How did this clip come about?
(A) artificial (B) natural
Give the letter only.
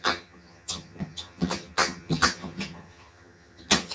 A